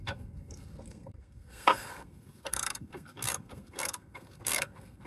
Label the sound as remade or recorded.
remade